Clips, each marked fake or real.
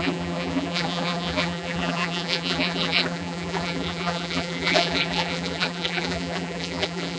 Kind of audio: fake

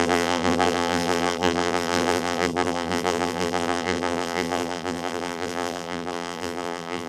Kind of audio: fake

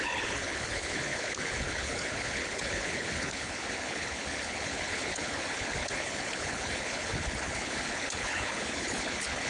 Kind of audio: fake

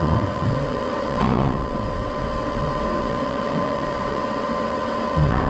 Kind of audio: fake